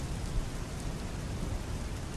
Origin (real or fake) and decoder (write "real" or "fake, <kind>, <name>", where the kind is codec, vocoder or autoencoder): real